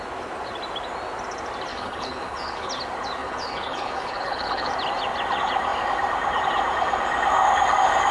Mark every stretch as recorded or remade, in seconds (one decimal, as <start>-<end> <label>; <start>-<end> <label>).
0.0-1.7 recorded; 1.7-2.7 remade; 2.7-3.2 recorded; 3.2-4.7 remade; 4.7-8.1 recorded